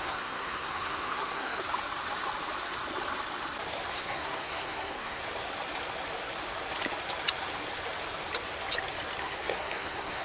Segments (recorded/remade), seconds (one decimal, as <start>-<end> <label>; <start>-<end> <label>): 0.0-1.6 remade; 1.6-3.9 recorded; 3.9-5.2 remade; 5.2-9.2 recorded; 9.2-10.2 remade